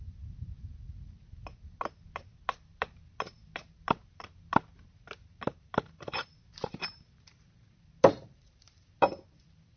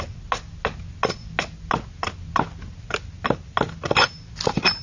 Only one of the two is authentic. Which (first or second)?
second